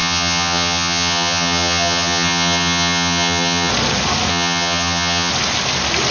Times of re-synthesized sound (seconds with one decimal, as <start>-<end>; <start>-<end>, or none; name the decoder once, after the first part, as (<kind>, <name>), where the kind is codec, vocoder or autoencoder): 0.0-3.7 (vocoder, HiFi-GAN); 4.3-5.3